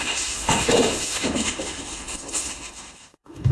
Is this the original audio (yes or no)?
no